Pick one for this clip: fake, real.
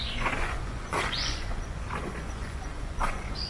fake